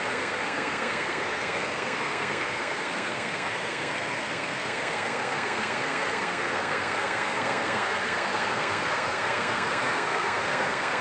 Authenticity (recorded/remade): remade